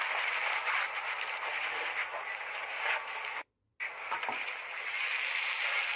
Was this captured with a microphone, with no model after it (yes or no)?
yes